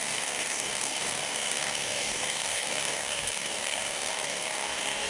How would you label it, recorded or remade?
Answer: remade